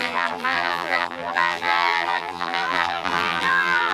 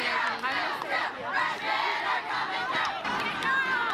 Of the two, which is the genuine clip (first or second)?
second